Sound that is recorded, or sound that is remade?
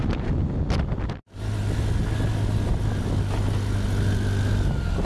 recorded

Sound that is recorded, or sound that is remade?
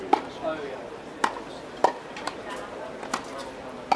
recorded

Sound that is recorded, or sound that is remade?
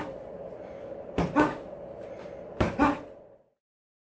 recorded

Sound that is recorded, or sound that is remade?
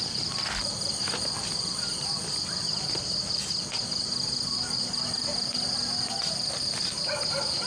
remade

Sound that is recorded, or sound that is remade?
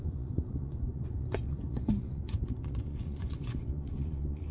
remade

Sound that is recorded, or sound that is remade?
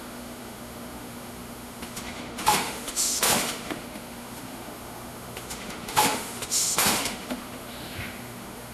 remade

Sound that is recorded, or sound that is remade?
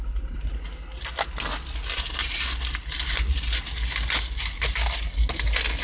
recorded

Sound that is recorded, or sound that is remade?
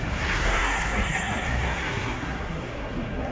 remade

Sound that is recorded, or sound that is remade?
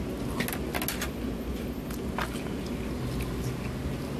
recorded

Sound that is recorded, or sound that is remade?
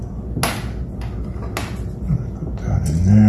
recorded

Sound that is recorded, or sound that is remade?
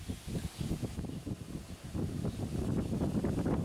recorded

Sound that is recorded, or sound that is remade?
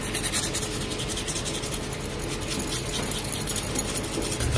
recorded